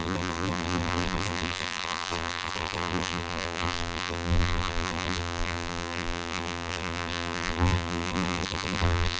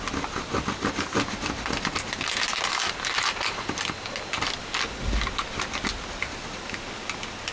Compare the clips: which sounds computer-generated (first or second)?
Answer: first